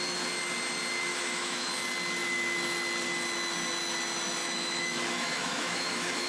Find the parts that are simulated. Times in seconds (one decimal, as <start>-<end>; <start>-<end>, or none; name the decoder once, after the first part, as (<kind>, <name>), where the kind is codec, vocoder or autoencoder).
1.1-1.7 (autoencoder, DAC-VAE); 4.4-6.3